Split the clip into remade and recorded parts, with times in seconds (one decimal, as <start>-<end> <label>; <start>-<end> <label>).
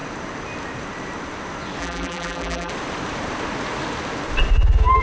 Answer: 0.0-1.8 recorded; 1.8-2.7 remade; 2.7-5.0 recorded